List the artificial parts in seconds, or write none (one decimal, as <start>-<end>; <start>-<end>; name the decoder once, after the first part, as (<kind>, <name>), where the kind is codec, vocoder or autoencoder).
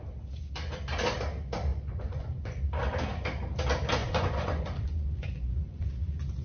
1.7-2.6 (vocoder, Vocos); 4.0-5.9